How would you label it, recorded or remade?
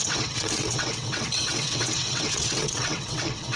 remade